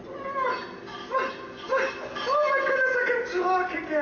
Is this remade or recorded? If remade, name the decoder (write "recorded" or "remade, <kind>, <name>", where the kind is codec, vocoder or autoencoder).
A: recorded